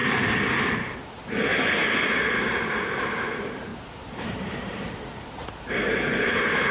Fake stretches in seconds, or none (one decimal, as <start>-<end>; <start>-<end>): 0.0-1.5; 3.2-6.7